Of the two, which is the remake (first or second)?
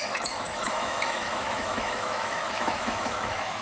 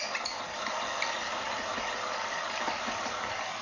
first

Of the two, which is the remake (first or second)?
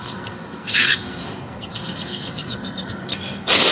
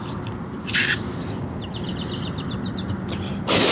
first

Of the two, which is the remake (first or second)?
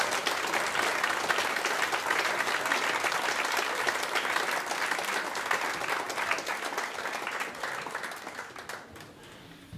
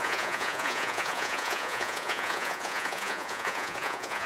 second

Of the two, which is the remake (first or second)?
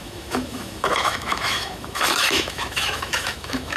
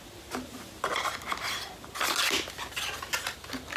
first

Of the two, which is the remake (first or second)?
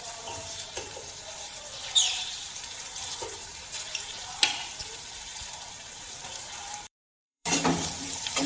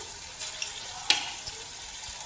first